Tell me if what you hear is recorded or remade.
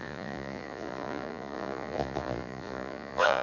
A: remade